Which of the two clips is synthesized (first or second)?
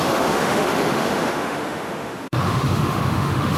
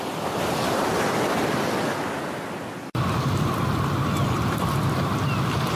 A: first